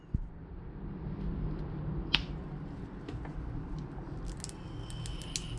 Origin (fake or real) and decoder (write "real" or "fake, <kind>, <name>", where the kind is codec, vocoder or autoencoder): real